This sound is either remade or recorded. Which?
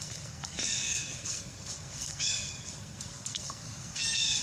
remade